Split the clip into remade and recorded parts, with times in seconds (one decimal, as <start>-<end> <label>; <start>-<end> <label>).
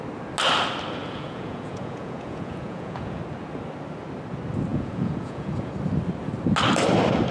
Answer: 0.0-1.0 recorded; 1.0-3.2 remade; 3.2-4.7 recorded; 4.7-5.7 remade; 5.7-7.3 recorded